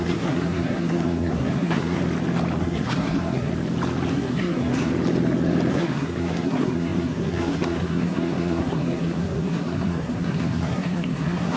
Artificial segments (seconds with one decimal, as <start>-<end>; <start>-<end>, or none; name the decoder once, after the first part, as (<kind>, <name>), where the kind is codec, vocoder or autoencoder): 0.0-2.0 (codec, SNAC); 2.6-3.5; 4.1-4.9; 5.7-11.6